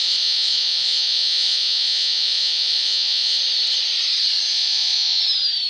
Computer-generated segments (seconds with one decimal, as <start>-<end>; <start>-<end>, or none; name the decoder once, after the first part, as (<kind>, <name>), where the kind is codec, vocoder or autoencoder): 0.0-3.4 (vocoder, Vocos); 4.5-5.2